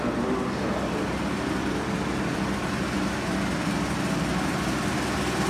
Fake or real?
real